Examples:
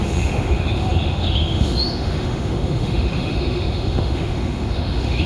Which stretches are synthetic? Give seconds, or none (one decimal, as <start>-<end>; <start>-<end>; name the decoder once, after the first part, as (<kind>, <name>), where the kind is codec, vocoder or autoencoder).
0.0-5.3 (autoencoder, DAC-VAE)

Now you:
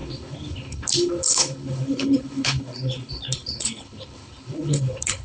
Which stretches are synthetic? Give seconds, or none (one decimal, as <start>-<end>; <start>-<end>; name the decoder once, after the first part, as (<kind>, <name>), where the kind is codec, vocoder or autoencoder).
0.0-5.2 (codec, HILCodec)

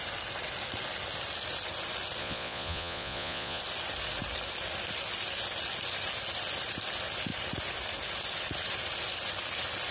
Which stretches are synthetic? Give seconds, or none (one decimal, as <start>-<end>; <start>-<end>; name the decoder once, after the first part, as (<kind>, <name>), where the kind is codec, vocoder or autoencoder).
2.2-3.6 (vocoder, Vocos)

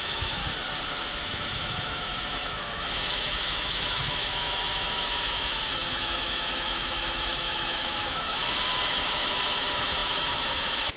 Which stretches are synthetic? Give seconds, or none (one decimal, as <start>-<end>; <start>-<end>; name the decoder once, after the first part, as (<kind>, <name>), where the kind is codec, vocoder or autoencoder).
0.0-0.4 (autoencoder, DAC-VAE); 1.2-8.4; 8.9-11.0